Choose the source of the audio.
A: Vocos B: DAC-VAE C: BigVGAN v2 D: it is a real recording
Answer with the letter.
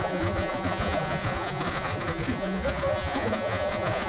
A